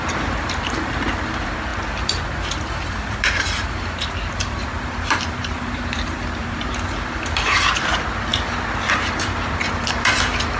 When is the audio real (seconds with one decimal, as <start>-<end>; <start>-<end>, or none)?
8.3-8.9